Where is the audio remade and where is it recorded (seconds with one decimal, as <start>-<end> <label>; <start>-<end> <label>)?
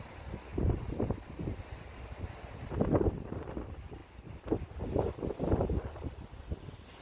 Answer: 0.0-7.0 recorded